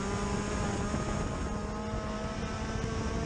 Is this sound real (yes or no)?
yes